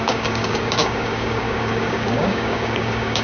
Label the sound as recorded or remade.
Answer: remade